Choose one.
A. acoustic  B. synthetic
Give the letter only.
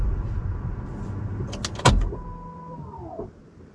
A